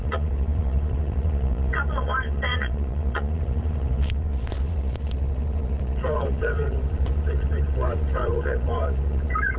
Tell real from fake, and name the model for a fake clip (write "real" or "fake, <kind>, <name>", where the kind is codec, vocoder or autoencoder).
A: fake, vocoder, Vocos